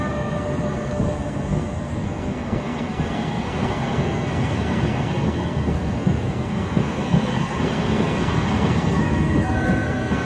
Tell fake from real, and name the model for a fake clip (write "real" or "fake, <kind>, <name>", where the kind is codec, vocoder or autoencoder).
fake, codec, SNAC